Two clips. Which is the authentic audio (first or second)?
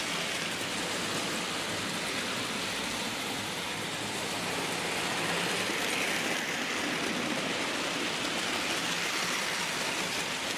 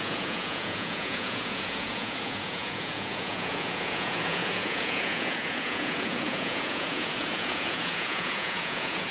first